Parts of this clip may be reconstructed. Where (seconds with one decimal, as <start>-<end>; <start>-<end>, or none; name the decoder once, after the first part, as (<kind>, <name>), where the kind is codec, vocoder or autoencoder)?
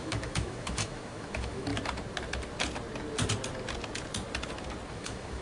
0.0-1.7 (autoencoder, DAC-VAE); 4.9-5.4